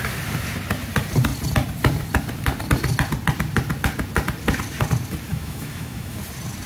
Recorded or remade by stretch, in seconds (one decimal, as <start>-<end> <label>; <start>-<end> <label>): 0.0-5.3 recorded; 5.3-6.2 remade; 6.2-6.7 recorded